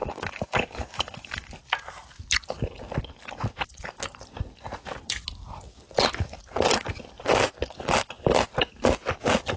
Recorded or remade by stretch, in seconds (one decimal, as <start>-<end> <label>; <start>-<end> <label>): 0.0-1.5 remade; 1.5-9.6 recorded

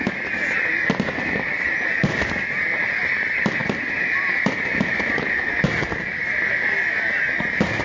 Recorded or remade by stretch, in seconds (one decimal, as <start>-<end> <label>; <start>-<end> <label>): 0.0-7.8 recorded